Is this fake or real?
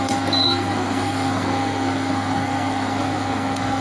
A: fake